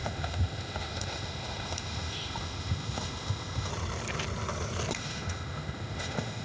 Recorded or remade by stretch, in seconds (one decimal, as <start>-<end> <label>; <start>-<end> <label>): 0.0-3.7 remade; 3.7-4.9 recorded; 4.9-6.4 remade